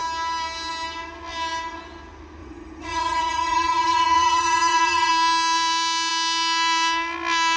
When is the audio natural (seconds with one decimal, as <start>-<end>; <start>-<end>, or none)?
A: 0.0-2.4; 5.1-7.6